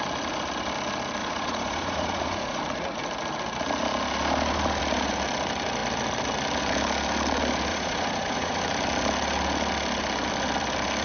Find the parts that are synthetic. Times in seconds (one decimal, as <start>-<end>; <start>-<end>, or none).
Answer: 1.2-2.6; 7.7-8.6